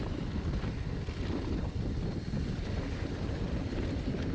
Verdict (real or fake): real